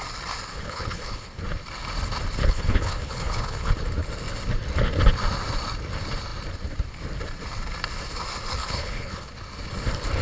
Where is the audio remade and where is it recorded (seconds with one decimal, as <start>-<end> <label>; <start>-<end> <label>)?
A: 0.0-0.5 recorded; 0.5-1.4 remade; 1.4-2.4 recorded; 2.4-3.7 remade; 3.7-8.6 recorded; 8.6-9.3 remade; 9.3-10.2 recorded